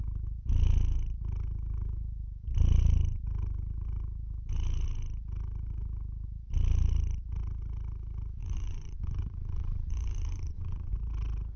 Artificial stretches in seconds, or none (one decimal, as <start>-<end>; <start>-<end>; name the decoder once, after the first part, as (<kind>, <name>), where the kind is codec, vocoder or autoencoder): 8.4-10.9 (vocoder, Vocos)

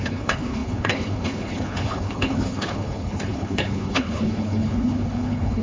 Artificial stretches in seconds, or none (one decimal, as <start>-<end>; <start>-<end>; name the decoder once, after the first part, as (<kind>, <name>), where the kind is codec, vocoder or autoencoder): 0.0-5.6 (codec, HILCodec)